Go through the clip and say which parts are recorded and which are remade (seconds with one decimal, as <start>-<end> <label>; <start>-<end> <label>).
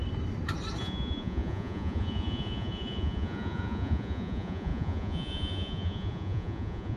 0.0-0.8 recorded; 0.8-7.0 remade